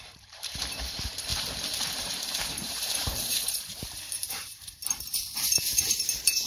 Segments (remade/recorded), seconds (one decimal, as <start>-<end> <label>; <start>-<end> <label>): 0.0-1.3 remade; 1.3-2.0 recorded; 2.0-6.5 remade